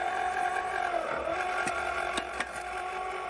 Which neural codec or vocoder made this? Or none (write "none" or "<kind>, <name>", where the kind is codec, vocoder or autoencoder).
none